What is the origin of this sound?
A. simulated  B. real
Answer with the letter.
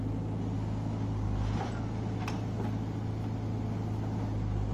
B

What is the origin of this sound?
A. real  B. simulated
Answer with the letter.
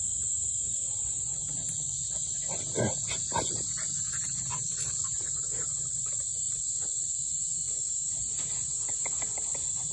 A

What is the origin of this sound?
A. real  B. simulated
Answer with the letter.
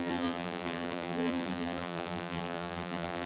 B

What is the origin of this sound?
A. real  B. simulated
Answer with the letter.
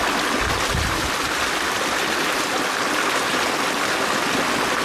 A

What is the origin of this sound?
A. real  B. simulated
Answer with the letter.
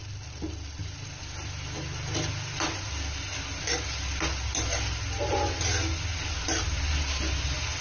A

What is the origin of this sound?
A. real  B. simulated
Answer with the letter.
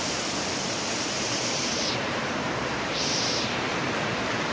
B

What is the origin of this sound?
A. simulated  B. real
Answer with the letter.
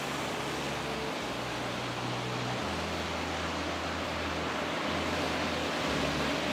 B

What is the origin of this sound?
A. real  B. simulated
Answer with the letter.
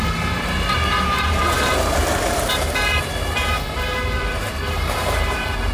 B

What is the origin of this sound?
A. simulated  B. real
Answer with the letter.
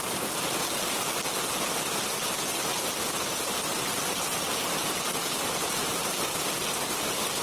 B